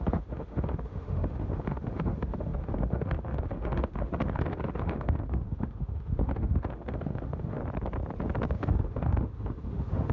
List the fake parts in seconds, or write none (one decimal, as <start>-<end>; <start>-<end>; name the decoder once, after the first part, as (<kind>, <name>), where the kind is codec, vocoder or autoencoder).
0.0-7.6 (autoencoder, DAC-VAE); 8.5-10.1